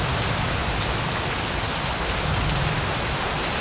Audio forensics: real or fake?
real